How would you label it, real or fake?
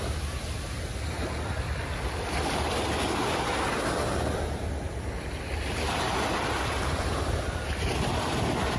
real